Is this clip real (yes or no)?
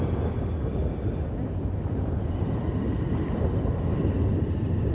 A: yes